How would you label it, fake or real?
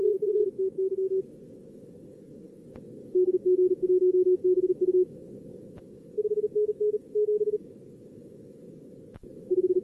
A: fake